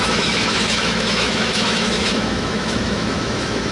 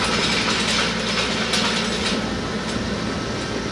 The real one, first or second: second